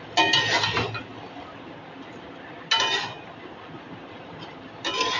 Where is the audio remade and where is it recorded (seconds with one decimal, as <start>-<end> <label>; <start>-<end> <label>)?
0.0-5.2 recorded